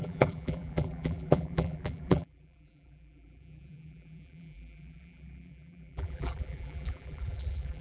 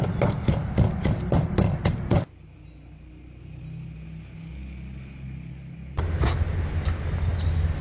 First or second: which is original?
second